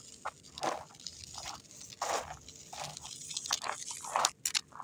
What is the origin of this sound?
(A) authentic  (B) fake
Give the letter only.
A